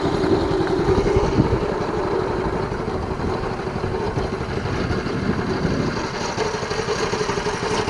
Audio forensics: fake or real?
real